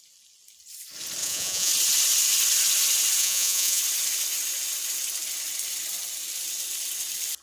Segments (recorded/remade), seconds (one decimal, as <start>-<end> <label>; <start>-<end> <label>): 0.0-1.2 recorded; 1.2-1.7 remade; 1.7-3.2 recorded; 3.2-3.8 remade; 3.8-7.4 recorded